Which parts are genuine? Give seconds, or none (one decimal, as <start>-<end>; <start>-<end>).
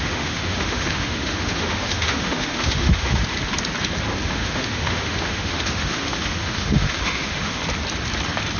3.2-4.3; 7.6-8.6